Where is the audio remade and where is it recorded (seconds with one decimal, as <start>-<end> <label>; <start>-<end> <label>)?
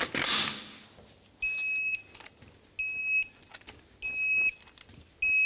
0.0-5.5 recorded